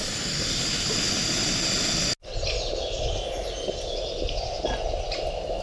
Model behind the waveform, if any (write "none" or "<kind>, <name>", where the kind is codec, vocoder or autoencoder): none